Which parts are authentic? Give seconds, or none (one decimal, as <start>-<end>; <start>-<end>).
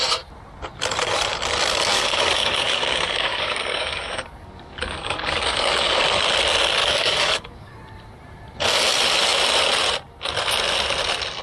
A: 0.0-1.9; 6.0-6.8; 7.7-11.4